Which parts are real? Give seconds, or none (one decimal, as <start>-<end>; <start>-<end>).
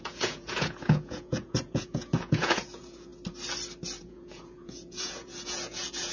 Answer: 3.1-4.0